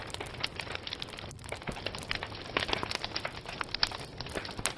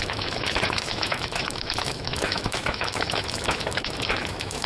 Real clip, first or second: first